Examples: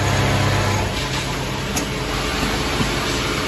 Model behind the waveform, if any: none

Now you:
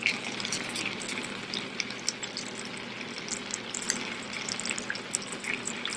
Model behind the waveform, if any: none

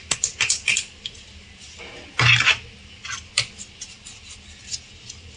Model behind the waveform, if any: none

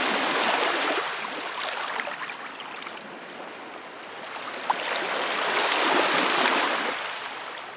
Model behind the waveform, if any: none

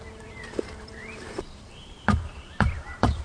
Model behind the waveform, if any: vocoder, BigVGAN v2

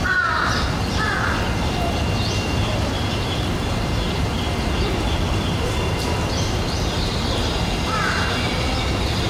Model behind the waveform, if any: none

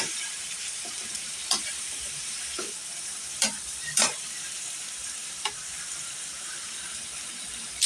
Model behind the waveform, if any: vocoder, BigVGAN v2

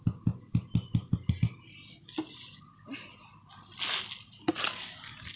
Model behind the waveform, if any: none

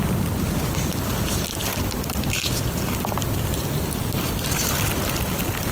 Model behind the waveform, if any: none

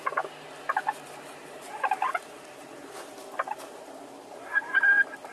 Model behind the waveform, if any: none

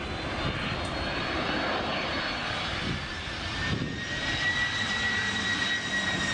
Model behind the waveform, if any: none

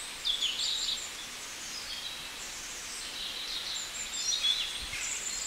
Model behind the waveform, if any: none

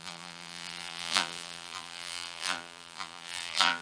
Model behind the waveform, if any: vocoder, BigVGAN v2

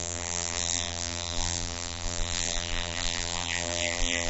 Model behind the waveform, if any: vocoder, BigVGAN v2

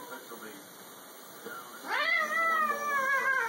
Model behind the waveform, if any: none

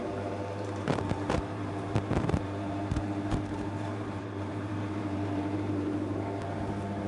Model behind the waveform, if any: vocoder, BigVGAN v2